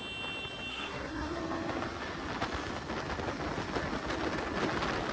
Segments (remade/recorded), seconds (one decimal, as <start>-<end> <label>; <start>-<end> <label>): 0.0-0.7 recorded; 0.7-1.4 remade; 1.4-5.1 recorded